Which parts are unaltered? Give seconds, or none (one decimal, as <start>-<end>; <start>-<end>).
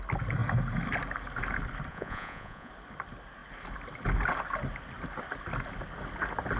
0.0-1.9; 2.7-6.6